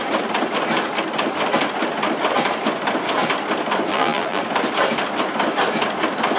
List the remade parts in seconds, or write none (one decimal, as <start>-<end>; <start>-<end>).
3.9-4.4